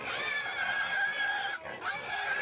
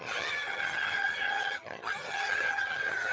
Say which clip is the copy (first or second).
second